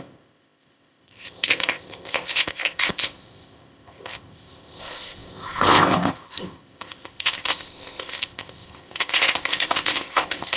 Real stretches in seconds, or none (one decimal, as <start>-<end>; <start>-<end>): none